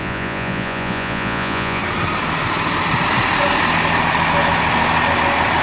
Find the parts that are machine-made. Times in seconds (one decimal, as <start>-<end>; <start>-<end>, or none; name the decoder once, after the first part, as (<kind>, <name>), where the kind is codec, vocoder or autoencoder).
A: 0.0-1.8 (vocoder, Vocos)